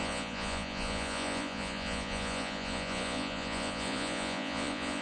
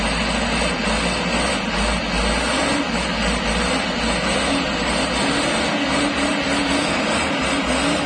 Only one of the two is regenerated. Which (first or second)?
first